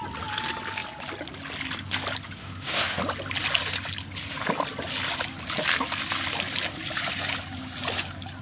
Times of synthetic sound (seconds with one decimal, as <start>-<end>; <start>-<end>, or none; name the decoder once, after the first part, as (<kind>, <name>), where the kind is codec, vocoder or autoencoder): 2.4-3.0 (autoencoder, DAC-VAE)